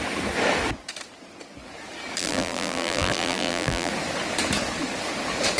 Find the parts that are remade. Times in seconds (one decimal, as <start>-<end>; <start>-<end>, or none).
2.2-3.9